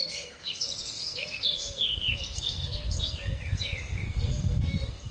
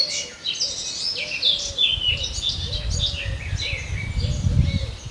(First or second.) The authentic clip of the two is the second